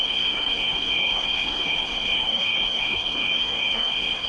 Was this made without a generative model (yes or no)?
no